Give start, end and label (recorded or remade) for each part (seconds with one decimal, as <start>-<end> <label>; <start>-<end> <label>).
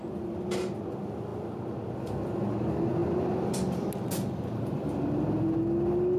0.0-6.2 recorded